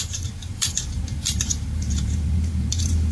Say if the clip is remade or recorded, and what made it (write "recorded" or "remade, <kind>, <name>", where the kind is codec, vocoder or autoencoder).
remade, vocoder, BigVGAN v2